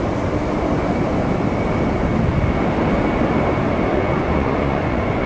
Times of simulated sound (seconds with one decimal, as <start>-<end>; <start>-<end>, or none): 3.9-5.3